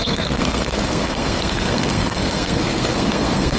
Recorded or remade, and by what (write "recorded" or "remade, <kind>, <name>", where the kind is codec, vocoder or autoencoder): remade, codec, SNAC